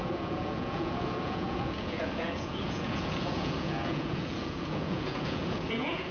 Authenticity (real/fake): fake